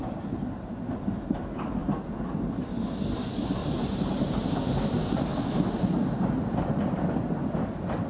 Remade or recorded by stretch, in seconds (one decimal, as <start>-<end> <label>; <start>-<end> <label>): 0.0-3.6 recorded; 3.6-4.4 remade; 4.4-8.1 recorded